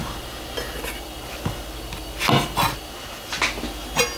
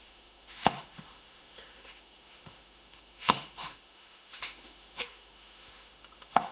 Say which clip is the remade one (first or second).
second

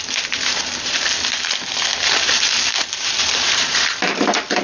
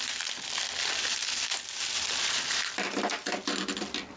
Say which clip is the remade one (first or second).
first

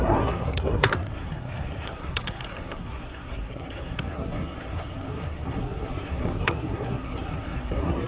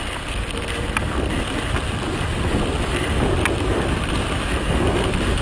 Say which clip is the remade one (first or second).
first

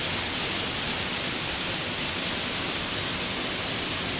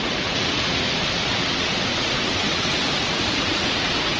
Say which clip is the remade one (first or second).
second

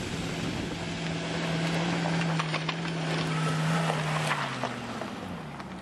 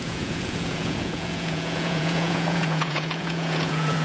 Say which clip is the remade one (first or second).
second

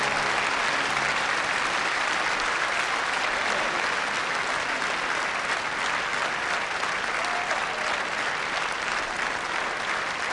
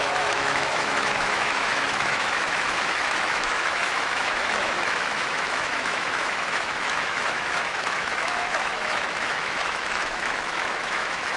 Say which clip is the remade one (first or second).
second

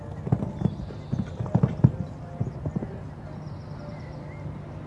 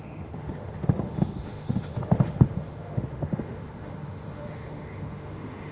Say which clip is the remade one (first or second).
second